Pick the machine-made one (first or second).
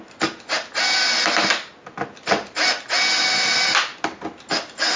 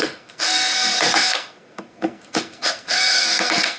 second